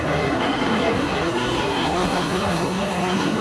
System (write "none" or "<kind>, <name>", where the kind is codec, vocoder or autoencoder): codec, SNAC